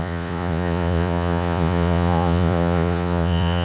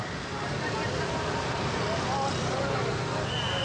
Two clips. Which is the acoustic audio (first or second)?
second